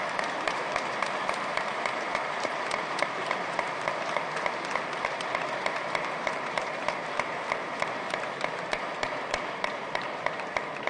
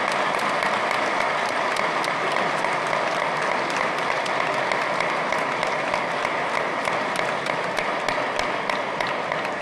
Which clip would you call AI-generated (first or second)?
first